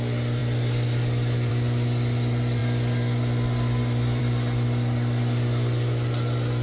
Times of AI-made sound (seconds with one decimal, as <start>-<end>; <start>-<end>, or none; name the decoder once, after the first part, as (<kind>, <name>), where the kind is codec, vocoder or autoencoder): none